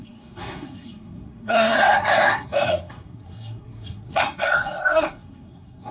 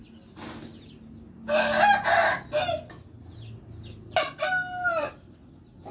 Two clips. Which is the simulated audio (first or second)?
first